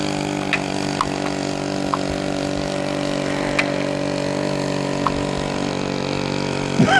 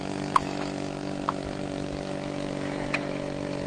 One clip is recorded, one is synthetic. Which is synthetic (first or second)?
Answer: second